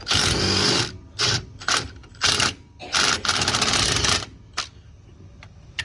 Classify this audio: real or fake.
real